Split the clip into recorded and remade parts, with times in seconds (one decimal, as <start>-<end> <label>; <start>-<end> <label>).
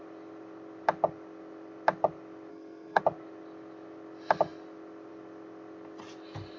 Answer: 0.0-2.5 recorded; 2.5-3.0 remade; 3.0-6.6 recorded